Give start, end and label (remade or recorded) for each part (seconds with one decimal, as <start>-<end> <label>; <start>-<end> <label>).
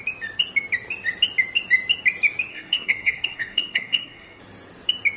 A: 0.0-2.5 recorded; 2.5-4.4 remade; 4.4-5.2 recorded